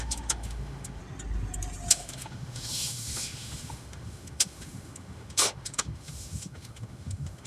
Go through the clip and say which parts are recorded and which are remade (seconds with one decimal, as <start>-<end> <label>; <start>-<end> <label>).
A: 0.0-1.0 remade; 1.0-1.9 recorded; 1.9-7.5 remade